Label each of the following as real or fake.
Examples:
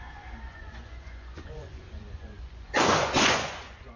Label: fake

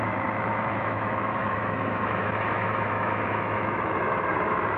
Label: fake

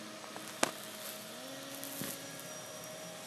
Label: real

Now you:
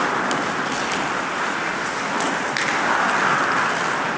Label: real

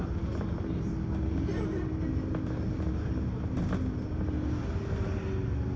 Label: real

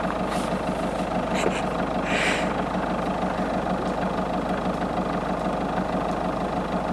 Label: real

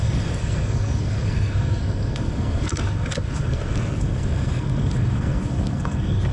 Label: fake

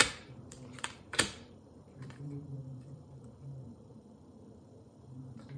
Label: fake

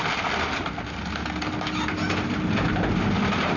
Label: real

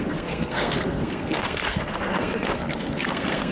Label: fake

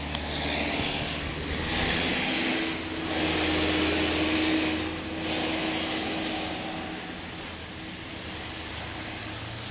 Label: real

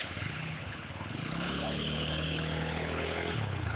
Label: fake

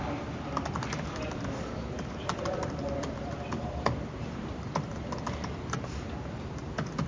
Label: fake